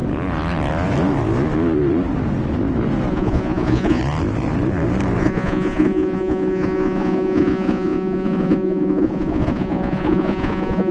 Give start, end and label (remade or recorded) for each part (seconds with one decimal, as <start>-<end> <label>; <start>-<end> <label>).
0.0-3.1 recorded; 3.1-4.0 remade; 4.0-5.2 recorded; 5.2-10.9 remade